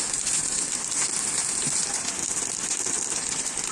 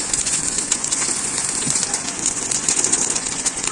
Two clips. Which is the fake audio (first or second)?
second